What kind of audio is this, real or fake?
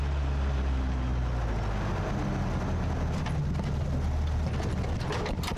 real